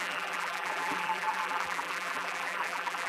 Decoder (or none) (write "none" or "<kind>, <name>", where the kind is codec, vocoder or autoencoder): vocoder, BigVGAN v2